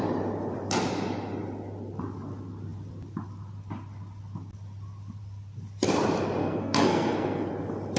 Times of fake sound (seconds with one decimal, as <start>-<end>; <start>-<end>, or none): 6.4-7.5